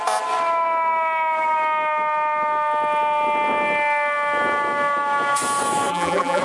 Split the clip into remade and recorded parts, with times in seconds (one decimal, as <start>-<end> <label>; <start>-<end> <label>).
0.0-5.9 recorded; 5.9-6.4 remade